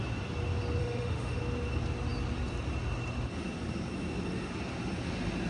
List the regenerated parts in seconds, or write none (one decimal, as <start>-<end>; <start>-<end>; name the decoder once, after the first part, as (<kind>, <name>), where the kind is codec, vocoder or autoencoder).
0.8-1.4 (autoencoder, DAC-VAE)